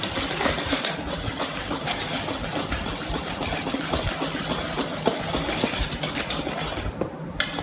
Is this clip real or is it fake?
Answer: real